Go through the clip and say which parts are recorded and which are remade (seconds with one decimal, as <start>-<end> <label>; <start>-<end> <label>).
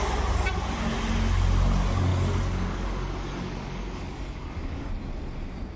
0.0-2.1 recorded; 2.1-4.9 remade; 4.9-5.8 recorded